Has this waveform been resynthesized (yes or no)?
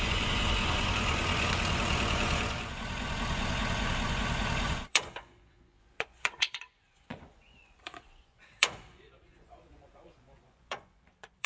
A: yes